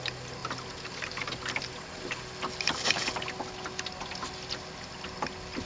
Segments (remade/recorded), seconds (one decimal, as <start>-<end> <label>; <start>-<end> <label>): 0.0-5.7 recorded